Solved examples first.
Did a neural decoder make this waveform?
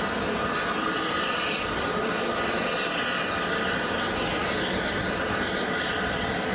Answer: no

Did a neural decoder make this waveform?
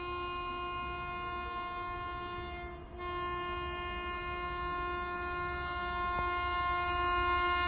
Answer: no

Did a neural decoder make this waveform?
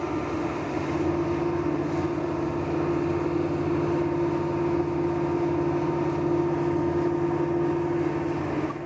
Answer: no